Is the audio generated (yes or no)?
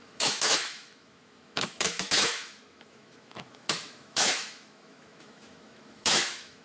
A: yes